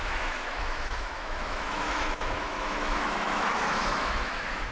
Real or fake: fake